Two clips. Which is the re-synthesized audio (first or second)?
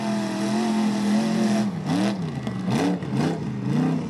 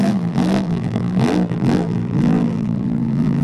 second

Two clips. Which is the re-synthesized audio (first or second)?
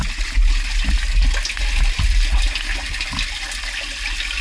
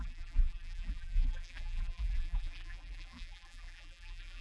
second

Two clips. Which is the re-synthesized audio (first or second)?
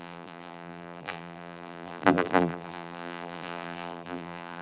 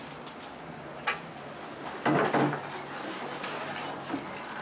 first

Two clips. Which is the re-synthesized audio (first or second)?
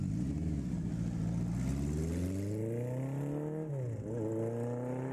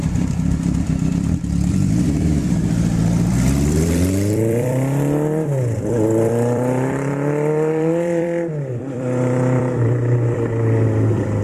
second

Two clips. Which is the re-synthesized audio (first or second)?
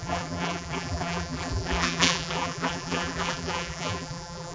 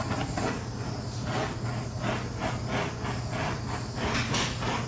first